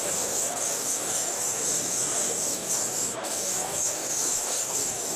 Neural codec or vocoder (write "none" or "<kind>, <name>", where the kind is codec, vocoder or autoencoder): codec, DAC